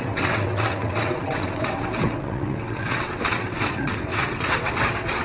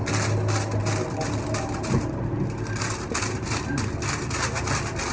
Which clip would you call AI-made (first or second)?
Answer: first